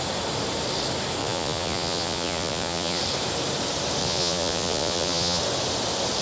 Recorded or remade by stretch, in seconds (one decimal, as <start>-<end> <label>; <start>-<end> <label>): 0.0-1.2 recorded; 1.2-3.0 remade; 3.0-4.0 recorded; 4.0-5.4 remade; 5.4-6.2 recorded